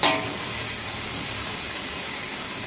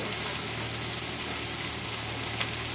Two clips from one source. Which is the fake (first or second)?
first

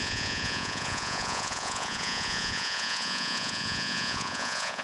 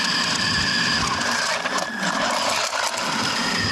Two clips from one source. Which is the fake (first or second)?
first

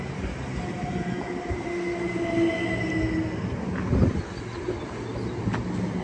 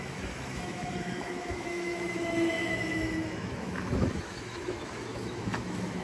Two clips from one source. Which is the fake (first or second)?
second